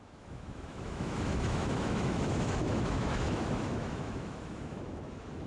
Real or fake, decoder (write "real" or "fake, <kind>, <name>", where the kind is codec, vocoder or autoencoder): fake, autoencoder, DAC-VAE